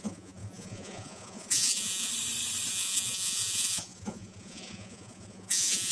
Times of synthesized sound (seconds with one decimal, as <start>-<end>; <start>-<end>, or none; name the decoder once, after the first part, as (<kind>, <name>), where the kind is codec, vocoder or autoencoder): 0.0-2.1 (vocoder, Vocos); 2.7-5.9